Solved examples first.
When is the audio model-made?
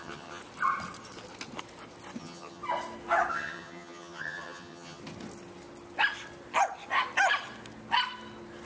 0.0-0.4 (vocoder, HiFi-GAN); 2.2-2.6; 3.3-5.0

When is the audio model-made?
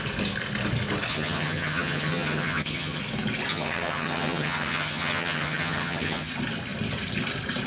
1.1-3.0 (vocoder, HiFi-GAN); 3.5-6.3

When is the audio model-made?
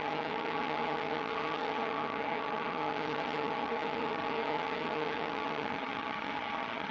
0.0-6.9 (vocoder, HiFi-GAN)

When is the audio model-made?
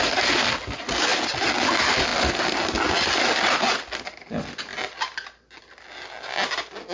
none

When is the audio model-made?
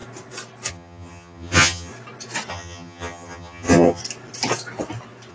0.7-1.9 (vocoder, HiFi-GAN); 2.5-4.0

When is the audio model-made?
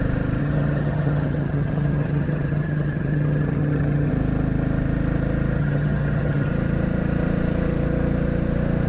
0.4-4.1 (vocoder, HiFi-GAN); 5.6-6.5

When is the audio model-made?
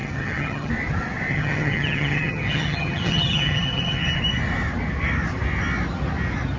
0.0-0.7 (vocoder, HiFi-GAN); 1.3-4.2